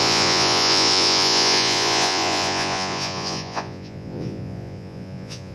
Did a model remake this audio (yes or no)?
yes